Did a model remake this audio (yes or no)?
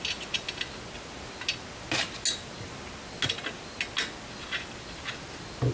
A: no